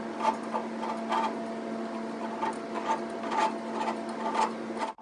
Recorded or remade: recorded